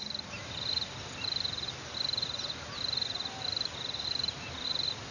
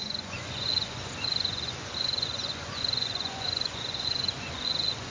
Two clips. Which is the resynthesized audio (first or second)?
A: second